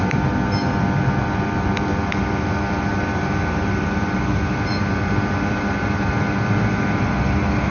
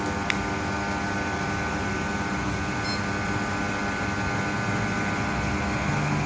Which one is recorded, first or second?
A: second